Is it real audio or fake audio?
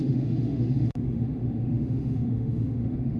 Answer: fake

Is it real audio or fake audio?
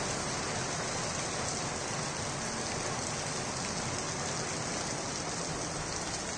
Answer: real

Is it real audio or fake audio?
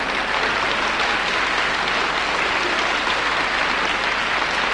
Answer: real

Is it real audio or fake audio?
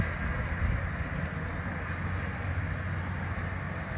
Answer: real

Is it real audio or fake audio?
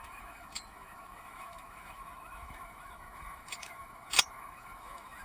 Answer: fake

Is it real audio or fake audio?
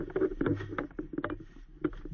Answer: real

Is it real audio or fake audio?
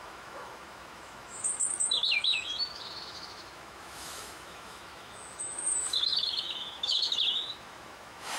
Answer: fake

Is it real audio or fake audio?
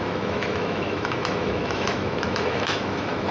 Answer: fake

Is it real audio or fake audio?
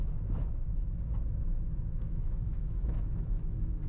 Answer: fake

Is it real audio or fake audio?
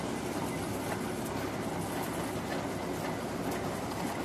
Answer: real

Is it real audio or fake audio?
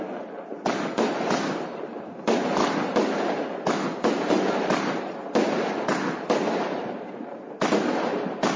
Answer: real